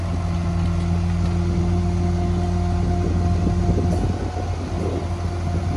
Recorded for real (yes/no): yes